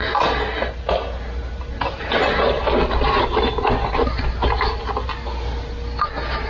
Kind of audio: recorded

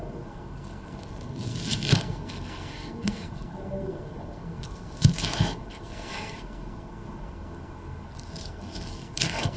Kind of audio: remade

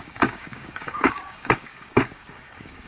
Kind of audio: remade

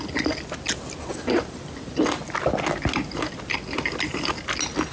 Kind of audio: recorded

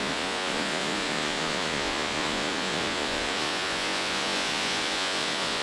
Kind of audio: remade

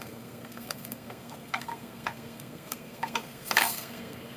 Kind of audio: remade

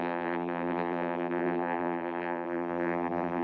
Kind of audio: remade